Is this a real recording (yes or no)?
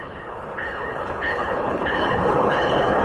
no